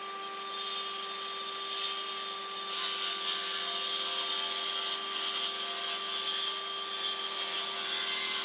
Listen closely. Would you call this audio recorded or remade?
recorded